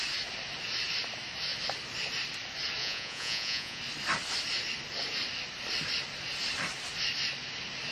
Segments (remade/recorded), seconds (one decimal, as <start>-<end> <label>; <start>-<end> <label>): 0.0-2.8 recorded; 2.8-3.8 remade; 3.8-7.9 recorded